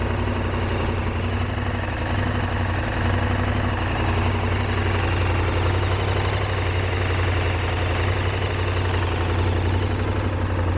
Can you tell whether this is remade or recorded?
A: recorded